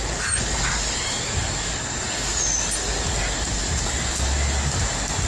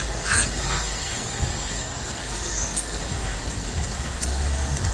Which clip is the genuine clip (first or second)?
first